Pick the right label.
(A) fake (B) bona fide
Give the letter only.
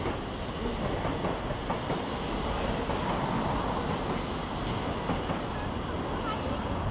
B